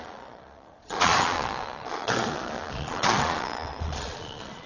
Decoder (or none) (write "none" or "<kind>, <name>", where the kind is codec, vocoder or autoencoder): vocoder, Vocos